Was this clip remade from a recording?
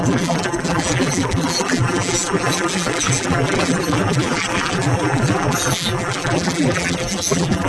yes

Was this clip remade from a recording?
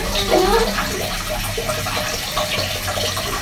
no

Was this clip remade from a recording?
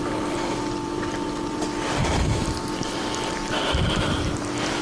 yes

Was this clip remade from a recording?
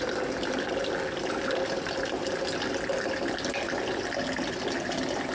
no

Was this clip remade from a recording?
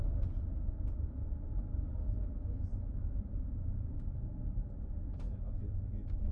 yes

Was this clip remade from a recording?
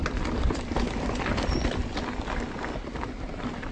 yes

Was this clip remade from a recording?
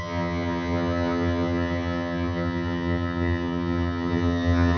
yes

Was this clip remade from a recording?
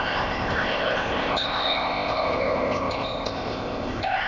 yes